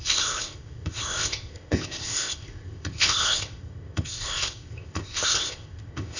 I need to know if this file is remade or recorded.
remade